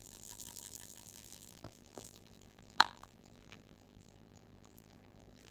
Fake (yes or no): yes